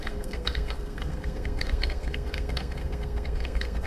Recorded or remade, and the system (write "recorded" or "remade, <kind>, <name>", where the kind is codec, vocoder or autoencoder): remade, codec, SNAC